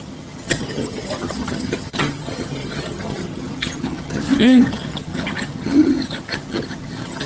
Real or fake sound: fake